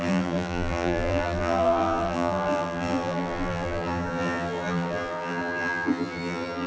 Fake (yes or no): yes